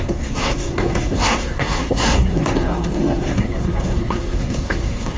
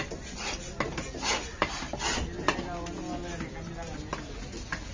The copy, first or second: first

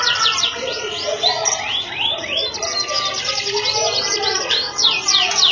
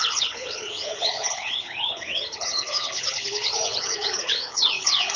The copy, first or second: second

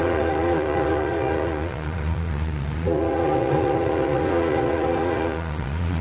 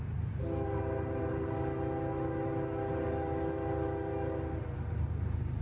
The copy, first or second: first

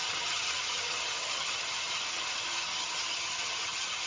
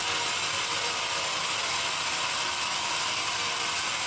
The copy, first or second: first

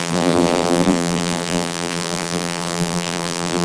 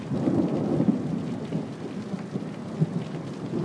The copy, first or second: first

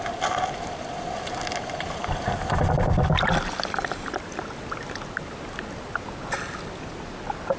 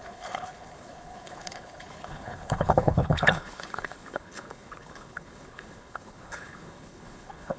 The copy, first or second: second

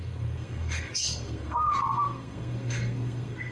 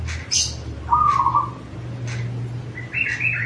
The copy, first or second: first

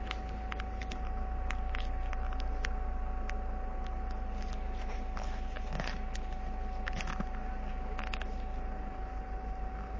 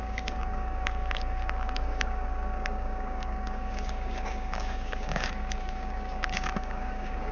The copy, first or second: second